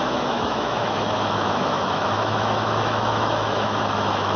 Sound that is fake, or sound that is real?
fake